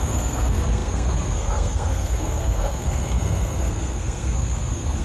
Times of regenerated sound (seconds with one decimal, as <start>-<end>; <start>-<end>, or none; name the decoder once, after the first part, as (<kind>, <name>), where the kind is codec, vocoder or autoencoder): 0.0-5.0 (codec, SNAC)